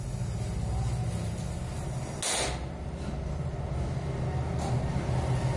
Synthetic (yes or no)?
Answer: no